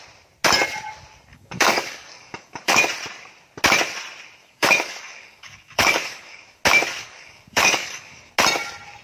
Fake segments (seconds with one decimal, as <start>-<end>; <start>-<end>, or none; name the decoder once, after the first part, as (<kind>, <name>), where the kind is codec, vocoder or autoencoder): 1.3-2.8 (codec, DAC); 4.4-6.6; 7.0-8.3